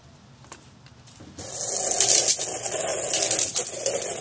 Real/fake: real